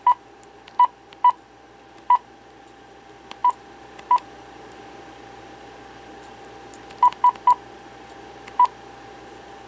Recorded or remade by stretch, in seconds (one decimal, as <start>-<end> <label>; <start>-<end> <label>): 0.0-9.7 recorded